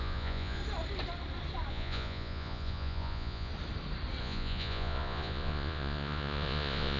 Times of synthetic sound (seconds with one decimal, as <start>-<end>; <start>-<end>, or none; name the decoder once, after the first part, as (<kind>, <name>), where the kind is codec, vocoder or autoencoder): 0.0-0.6 (vocoder, Vocos); 1.7-3.5; 4.2-7.0